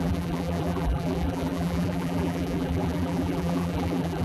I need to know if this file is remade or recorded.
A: remade